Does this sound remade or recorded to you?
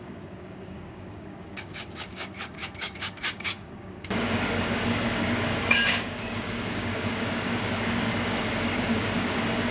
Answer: remade